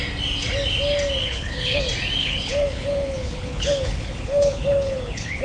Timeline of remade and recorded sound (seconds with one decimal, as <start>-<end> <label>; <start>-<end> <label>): 0.0-1.2 recorded; 1.2-1.8 remade; 1.8-2.2 recorded; 2.2-5.4 remade